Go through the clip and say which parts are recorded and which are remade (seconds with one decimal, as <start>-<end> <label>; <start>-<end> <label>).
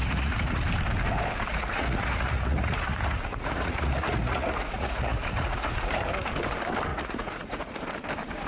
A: 0.0-0.6 remade; 0.6-1.5 recorded; 1.5-5.9 remade; 5.9-6.9 recorded; 6.9-7.7 remade; 7.7-8.5 recorded